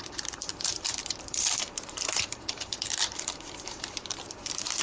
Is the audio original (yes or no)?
no